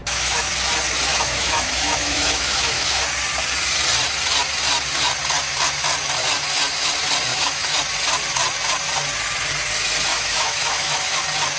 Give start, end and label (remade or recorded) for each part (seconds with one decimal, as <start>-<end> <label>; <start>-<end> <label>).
0.0-0.5 remade; 0.5-1.1 recorded; 1.1-3.0 remade; 3.0-7.3 recorded; 7.3-7.8 remade; 7.8-10.1 recorded; 10.1-11.2 remade; 11.2-11.6 recorded